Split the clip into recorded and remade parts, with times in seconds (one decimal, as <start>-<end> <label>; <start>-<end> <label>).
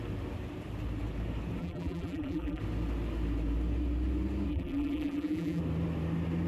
0.0-1.6 recorded; 1.6-2.6 remade; 2.6-4.5 recorded; 4.5-5.6 remade; 5.6-6.5 recorded